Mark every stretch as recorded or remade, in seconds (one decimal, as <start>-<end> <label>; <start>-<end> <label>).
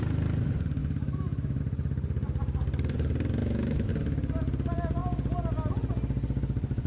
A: 0.0-0.8 recorded; 0.8-1.6 remade; 1.6-3.4 recorded; 3.4-3.9 remade; 3.9-6.9 recorded